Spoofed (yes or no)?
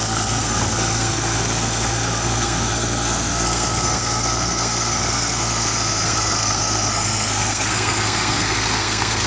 yes